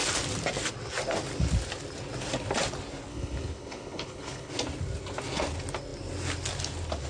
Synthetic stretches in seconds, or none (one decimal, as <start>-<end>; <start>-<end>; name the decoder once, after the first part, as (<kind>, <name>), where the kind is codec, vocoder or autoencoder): 3.1-4.5 (codec, HILCodec)